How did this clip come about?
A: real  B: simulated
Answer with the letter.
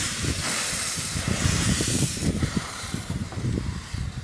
B